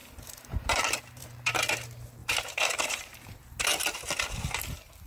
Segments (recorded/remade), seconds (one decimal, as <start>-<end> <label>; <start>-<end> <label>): 0.0-1.5 remade; 1.5-2.2 recorded; 2.2-2.8 remade; 2.8-5.1 recorded